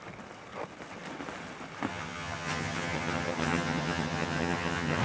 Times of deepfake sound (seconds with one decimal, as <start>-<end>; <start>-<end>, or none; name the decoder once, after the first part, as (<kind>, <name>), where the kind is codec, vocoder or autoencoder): 1.9-5.0 (vocoder, HiFi-GAN)